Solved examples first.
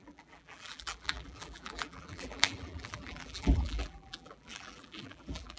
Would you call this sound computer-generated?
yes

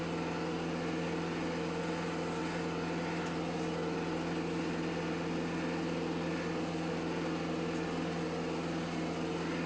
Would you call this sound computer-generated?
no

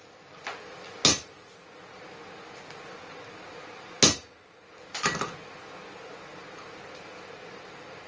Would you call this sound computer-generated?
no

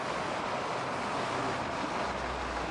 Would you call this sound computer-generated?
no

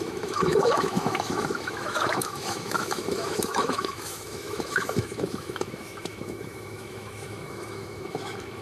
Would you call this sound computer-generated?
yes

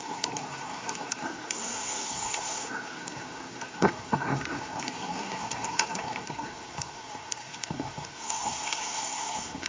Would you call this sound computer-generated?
yes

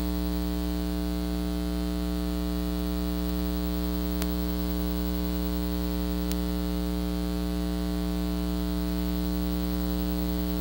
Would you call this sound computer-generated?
no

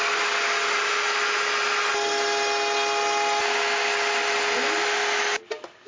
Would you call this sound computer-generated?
no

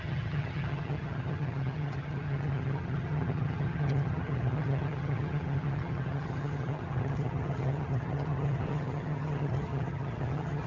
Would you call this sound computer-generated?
yes